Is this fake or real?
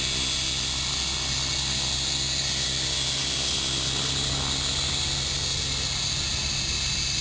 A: real